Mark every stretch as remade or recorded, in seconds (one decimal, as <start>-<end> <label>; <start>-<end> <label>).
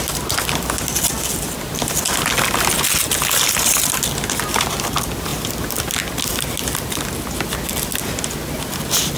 0.0-9.2 recorded